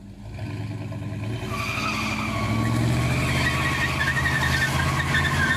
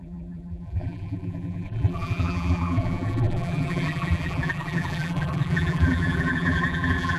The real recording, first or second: first